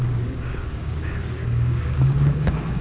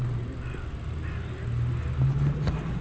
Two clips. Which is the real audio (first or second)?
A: second